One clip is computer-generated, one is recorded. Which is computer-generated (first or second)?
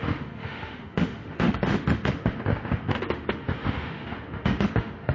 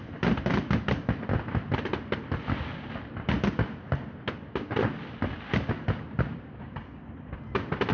first